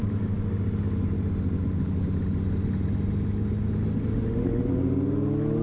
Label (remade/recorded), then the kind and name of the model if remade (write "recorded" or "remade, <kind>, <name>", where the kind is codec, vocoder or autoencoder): recorded